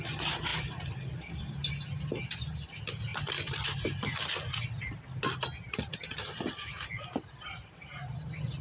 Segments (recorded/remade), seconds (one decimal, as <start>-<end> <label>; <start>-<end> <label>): 0.0-8.6 recorded